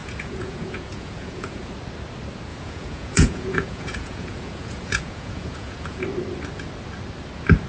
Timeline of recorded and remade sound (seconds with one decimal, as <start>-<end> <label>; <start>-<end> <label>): 0.0-1.7 remade; 1.7-2.5 recorded; 2.5-6.0 remade; 6.0-7.7 recorded